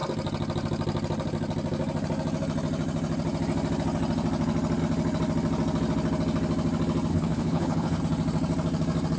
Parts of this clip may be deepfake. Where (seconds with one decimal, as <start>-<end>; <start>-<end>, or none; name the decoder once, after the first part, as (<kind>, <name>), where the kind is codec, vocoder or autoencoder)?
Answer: 7.1-8.0 (codec, HILCodec)